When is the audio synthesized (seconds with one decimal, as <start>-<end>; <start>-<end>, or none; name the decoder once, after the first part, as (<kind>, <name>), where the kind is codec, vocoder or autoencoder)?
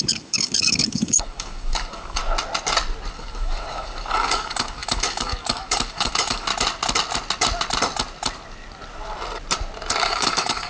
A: 0.0-2.2 (codec, DAC); 3.1-6.5; 10.0-10.7